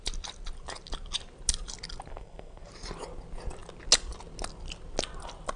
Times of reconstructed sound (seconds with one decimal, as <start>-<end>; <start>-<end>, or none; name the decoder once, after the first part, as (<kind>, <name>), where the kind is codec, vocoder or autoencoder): 2.1-2.7 (codec, SNAC)